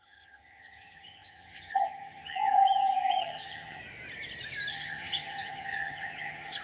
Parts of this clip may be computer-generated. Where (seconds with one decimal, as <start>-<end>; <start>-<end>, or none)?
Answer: 0.0-3.8; 4.7-6.6